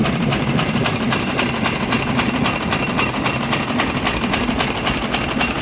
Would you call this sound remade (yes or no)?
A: no